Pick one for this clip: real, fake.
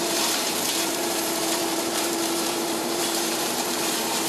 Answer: fake